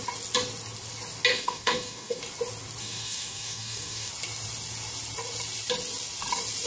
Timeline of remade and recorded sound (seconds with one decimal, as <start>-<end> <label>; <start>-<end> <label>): 0.0-1.3 recorded; 1.3-2.2 remade; 2.2-2.8 recorded; 2.8-4.1 remade; 4.1-6.7 recorded